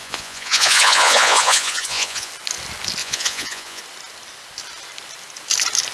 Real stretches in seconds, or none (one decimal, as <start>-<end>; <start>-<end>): 2.3-3.0; 3.8-5.9